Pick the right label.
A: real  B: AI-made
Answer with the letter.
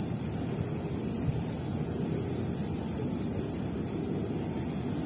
A